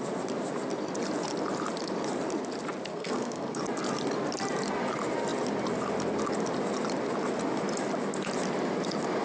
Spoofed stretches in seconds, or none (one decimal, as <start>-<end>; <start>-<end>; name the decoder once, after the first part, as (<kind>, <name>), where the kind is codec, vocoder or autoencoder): 2.9-3.6 (codec, SNAC)